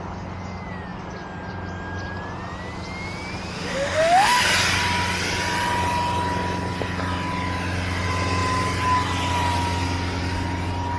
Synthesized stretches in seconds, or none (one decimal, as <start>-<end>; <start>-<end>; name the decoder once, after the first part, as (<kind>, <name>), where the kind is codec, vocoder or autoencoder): 3.5-4.4 (autoencoder, DAC-VAE)